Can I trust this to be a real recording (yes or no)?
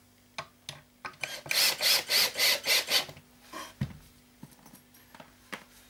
yes